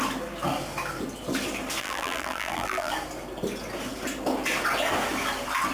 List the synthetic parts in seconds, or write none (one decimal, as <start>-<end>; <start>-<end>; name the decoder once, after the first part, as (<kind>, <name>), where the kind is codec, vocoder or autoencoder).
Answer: 1.8-2.9 (vocoder, BigVGAN v2)